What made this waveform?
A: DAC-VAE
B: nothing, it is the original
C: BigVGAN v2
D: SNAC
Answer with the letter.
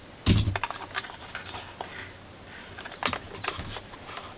B